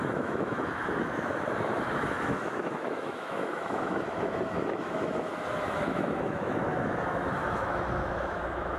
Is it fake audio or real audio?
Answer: fake